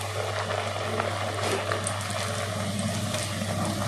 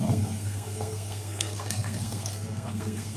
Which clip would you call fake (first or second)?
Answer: second